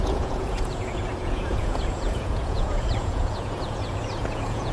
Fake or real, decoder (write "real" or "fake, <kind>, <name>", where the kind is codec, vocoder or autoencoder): fake, vocoder, Vocos